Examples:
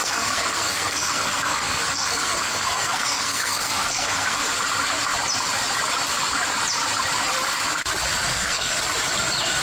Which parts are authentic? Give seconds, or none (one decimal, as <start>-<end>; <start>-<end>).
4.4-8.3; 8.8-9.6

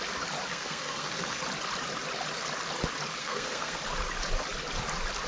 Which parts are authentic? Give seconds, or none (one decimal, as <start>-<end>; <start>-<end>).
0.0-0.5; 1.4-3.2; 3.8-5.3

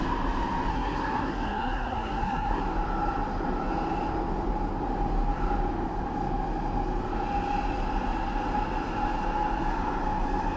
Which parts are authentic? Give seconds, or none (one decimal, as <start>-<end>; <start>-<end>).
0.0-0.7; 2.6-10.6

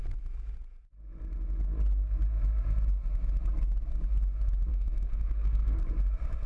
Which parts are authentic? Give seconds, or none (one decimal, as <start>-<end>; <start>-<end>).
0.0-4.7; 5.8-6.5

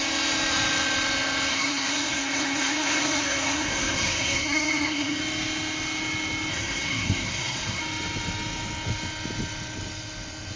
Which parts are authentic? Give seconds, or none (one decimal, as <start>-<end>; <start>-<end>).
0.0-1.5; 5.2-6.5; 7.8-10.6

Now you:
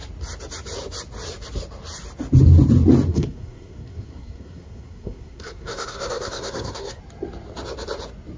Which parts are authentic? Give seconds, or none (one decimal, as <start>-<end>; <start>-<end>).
0.0-3.1; 7.0-8.4

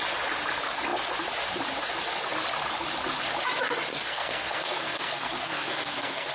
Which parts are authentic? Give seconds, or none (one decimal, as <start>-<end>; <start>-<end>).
0.0-3.9